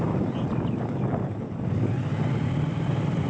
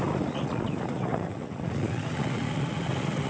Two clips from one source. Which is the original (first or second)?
first